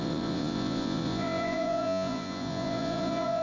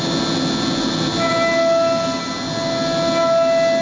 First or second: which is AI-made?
first